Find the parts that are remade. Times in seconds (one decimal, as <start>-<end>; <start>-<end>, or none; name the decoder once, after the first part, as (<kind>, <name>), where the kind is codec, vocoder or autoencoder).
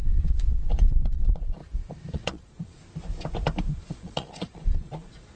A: 0.0-1.6 (vocoder, Vocos); 2.1-2.8; 3.7-5.4